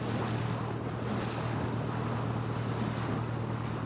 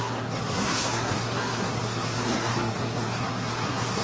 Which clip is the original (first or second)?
first